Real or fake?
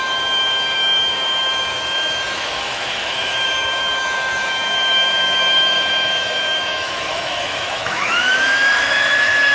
fake